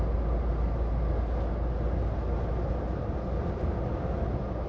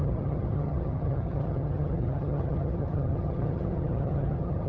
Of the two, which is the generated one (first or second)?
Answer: second